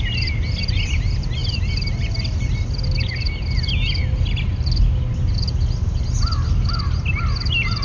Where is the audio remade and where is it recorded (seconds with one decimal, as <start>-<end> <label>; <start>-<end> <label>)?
0.0-7.8 recorded